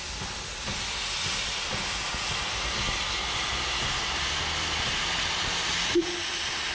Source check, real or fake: real